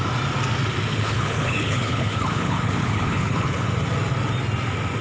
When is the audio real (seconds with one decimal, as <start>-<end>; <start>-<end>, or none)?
0.0-0.9; 3.7-5.0